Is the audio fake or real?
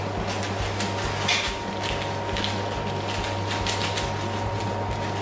real